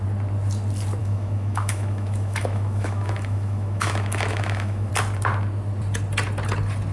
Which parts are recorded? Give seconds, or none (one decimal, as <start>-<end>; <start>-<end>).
0.0-1.0; 4.9-6.9